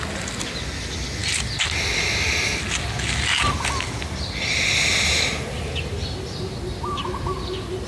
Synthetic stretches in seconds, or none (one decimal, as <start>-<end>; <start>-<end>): none

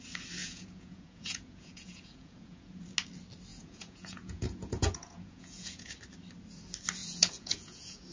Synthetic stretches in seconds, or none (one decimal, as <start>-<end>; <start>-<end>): 0.4-2.8; 3.5-5.9; 7.0-8.1